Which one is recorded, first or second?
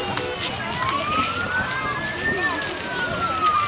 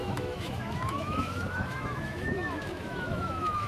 first